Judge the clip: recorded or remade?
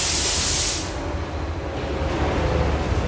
recorded